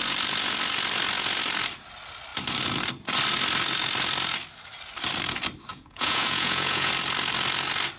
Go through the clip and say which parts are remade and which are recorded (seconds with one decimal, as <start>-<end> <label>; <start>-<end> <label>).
0.0-5.7 recorded; 5.7-6.9 remade; 6.9-8.0 recorded